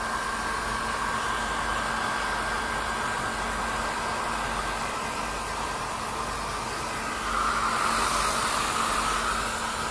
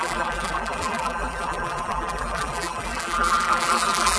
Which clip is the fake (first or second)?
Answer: second